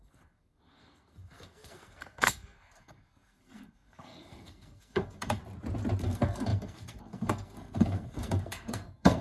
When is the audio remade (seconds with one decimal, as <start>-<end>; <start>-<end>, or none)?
0.0-5.4; 6.0-9.2